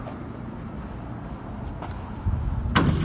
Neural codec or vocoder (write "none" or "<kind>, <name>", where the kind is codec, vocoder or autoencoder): none